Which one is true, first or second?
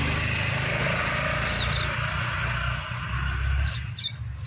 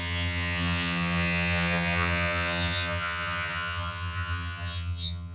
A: first